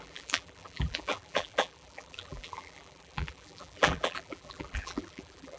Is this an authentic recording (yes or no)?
no